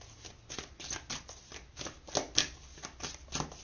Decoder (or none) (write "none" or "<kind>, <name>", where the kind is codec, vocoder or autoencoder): none